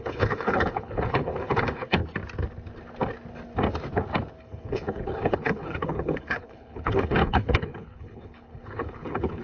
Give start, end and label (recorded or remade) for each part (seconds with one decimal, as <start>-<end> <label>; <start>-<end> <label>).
0.0-2.0 remade; 2.0-4.4 recorded; 4.4-9.4 remade